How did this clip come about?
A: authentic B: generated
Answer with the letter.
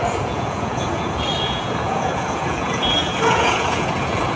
B